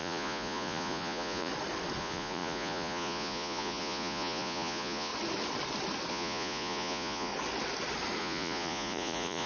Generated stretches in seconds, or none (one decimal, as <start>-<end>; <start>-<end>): 0.0-1.5; 2.0-5.1; 6.1-7.3; 8.2-9.5